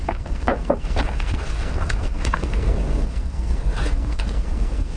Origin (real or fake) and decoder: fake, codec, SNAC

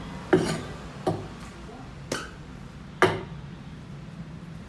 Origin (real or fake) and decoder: real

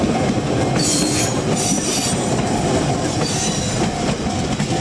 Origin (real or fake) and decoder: real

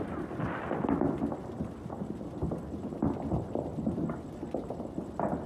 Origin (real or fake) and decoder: real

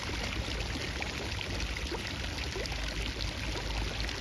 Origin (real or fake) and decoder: real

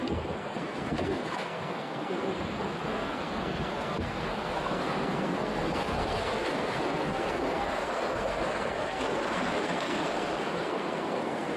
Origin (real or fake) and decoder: fake, codec, SNAC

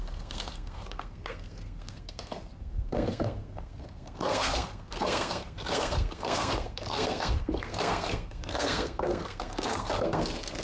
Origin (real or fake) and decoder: fake, codec, SNAC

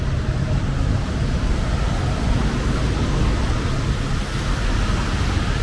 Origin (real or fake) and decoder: real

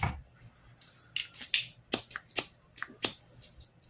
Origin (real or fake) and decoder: real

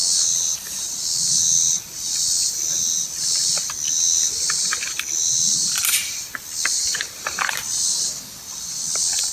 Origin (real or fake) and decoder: real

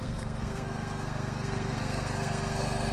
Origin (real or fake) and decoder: fake, codec, SNAC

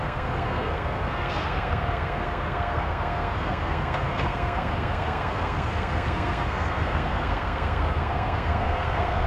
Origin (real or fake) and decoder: fake, codec, SNAC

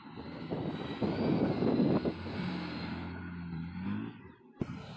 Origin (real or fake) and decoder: real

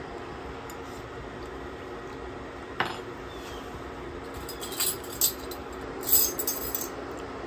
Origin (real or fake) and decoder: real